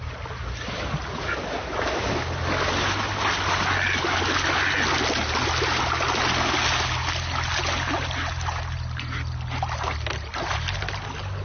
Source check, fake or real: real